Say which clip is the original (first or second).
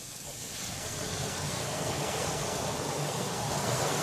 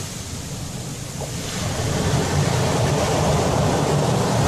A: second